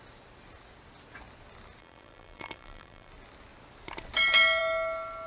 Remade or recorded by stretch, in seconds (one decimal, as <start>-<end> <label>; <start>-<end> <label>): 0.0-1.8 recorded; 1.8-3.1 remade; 3.1-5.3 recorded

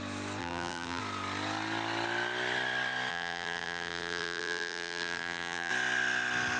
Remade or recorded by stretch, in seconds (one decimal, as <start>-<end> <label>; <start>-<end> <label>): 0.0-0.4 recorded; 0.4-1.0 remade; 1.0-3.1 recorded; 3.1-5.7 remade; 5.7-6.6 recorded

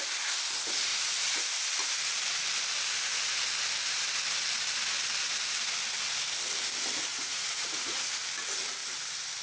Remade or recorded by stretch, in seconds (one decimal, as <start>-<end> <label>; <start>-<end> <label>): 0.0-7.1 recorded; 7.1-8.1 remade; 8.1-9.4 recorded

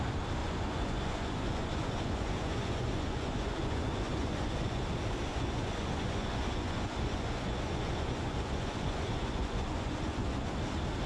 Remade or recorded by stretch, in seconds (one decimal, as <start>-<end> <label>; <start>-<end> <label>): 0.0-0.4 recorded; 0.4-4.8 remade; 4.8-5.3 recorded; 5.3-10.5 remade; 10.5-11.1 recorded

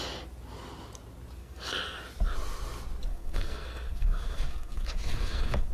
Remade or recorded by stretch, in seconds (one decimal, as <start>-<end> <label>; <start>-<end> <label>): 0.0-1.4 recorded; 1.4-2.0 remade; 2.0-3.1 recorded; 3.1-5.7 remade